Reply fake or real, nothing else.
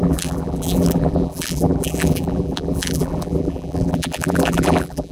fake